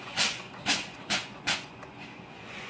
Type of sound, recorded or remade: remade